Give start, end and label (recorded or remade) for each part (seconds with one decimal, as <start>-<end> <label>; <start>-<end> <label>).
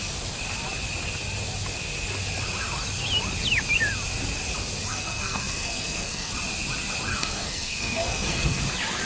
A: 0.0-4.9 recorded; 4.9-6.3 remade; 6.3-7.1 recorded; 7.1-8.6 remade; 8.6-9.1 recorded